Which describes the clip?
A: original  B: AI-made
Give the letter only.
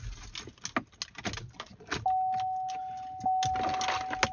A